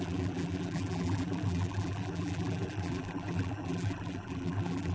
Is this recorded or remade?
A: remade